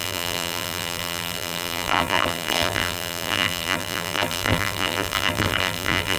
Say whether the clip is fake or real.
fake